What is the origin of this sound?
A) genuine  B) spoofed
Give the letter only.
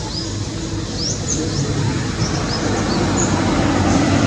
A